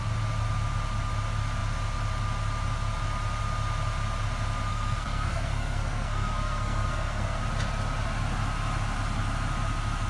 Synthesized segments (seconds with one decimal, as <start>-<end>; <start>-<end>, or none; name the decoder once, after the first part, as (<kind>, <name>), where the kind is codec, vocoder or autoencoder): 4.7-7.4 (codec, SNAC)